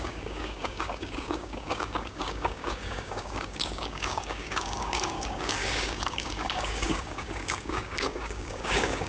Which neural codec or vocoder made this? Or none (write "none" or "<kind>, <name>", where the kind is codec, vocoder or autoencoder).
codec, DAC